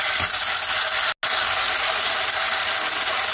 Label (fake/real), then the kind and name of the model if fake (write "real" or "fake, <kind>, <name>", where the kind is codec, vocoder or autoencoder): real